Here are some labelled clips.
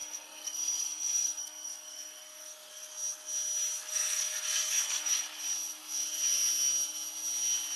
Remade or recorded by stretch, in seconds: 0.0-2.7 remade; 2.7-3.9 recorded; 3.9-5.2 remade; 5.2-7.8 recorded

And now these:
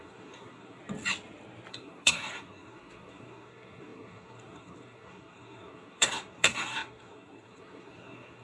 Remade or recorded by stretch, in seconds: 0.0-0.8 remade; 0.8-1.7 recorded; 1.7-8.4 remade

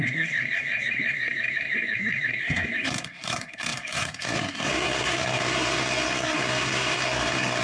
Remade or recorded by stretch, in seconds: 0.0-7.6 remade

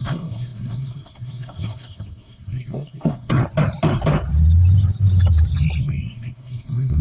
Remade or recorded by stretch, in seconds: 0.0-3.4 remade; 3.4-5.8 recorded; 5.8-7.0 remade

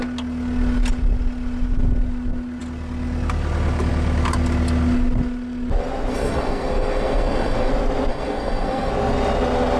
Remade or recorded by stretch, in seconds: 0.0-6.1 recorded; 6.1-7.7 remade; 7.7-8.1 recorded; 8.1-8.9 remade; 8.9-9.8 recorded

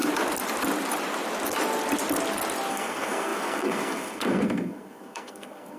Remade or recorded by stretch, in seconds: 0.0-2.7 recorded; 2.7-5.8 remade

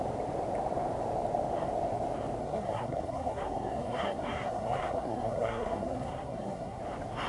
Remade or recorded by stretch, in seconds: 0.0-2.4 recorded; 2.4-6.8 remade; 6.8-7.3 recorded

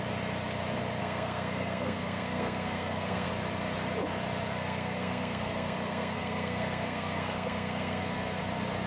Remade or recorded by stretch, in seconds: 0.0-1.0 recorded; 1.0-3.3 remade; 3.3-4.5 recorded; 4.5-8.4 remade; 8.4-8.9 recorded